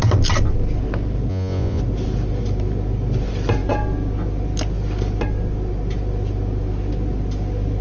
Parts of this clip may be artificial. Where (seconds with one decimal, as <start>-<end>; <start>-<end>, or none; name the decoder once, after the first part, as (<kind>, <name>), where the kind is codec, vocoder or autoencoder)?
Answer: 1.3-1.8 (vocoder, Vocos)